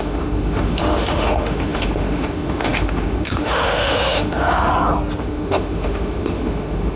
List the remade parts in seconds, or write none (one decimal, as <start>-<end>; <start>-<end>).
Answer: 0.0-4.7; 5.2-7.0